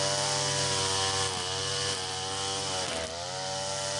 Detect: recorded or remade recorded